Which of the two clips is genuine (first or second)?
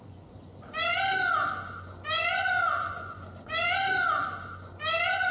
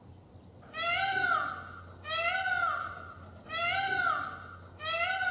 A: second